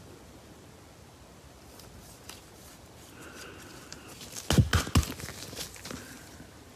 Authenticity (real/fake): real